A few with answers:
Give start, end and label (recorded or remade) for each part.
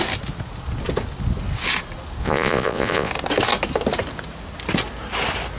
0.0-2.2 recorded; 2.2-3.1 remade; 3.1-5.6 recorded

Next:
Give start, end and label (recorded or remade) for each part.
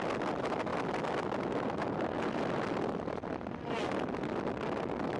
0.0-5.2 recorded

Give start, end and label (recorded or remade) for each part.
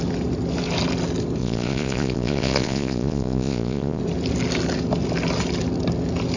0.0-1.4 recorded; 1.4-4.0 remade; 4.0-6.4 recorded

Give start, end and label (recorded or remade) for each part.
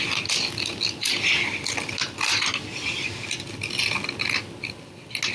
0.0-5.3 recorded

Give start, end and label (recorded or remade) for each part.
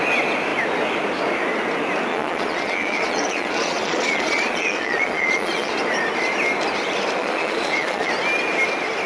0.0-2.1 recorded; 2.1-5.7 remade; 5.7-7.2 recorded; 7.2-8.1 remade; 8.1-9.1 recorded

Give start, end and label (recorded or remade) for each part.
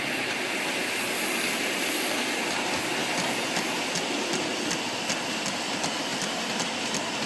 0.0-7.3 recorded